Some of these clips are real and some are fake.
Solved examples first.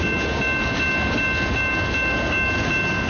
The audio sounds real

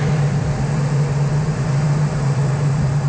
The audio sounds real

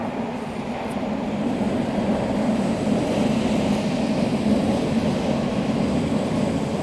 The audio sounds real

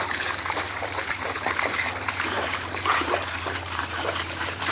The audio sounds fake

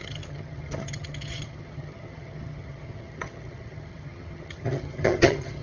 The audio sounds fake